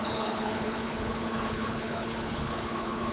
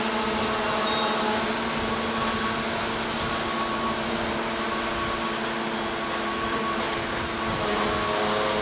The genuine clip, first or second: second